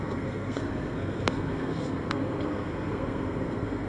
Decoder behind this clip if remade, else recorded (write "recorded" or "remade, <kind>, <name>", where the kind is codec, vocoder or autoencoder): remade, codec, SNAC